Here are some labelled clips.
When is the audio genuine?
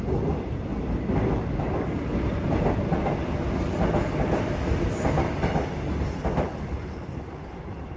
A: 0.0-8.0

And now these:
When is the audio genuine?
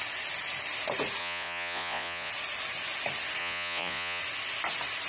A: 0.0-1.2; 2.3-3.4; 4.2-5.1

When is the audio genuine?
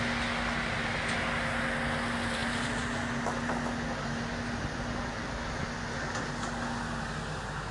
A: 0.0-7.7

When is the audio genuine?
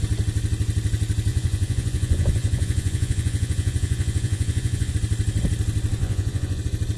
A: 0.0-1.3; 4.9-6.0; 6.6-7.0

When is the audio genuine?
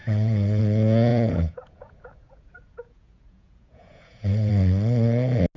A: 0.6-1.1; 4.5-5.6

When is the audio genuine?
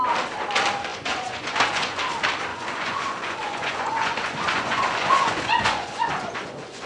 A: 0.0-0.9; 2.0-2.5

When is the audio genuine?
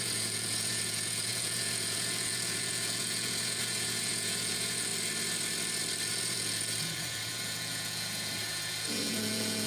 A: 4.9-6.1